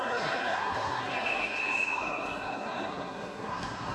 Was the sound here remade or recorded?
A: remade